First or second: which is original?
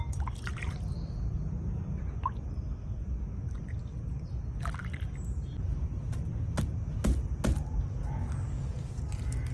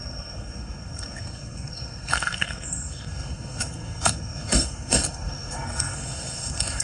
first